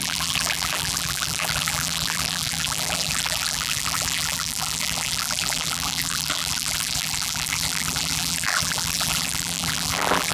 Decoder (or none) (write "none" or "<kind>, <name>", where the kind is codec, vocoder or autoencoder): vocoder, BigVGAN v2